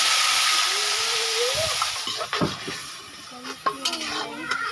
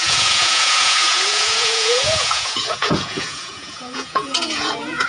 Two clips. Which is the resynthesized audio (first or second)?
second